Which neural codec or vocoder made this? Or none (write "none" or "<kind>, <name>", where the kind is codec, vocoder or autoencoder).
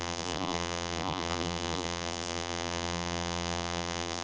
vocoder, BigVGAN v2